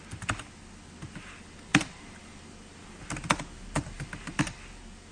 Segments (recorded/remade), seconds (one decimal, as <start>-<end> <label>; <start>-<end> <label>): 0.0-5.1 recorded